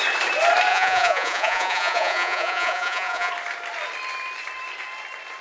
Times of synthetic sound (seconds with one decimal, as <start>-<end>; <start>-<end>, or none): 0.7-3.3